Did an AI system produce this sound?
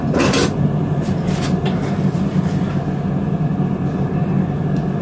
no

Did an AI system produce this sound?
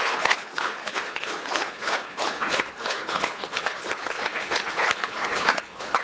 yes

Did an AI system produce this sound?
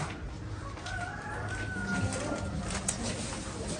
no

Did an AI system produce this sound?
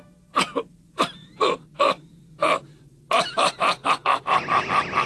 no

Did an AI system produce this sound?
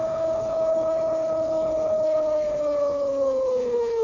yes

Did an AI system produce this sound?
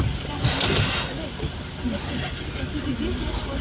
no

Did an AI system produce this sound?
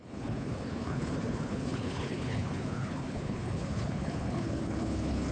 yes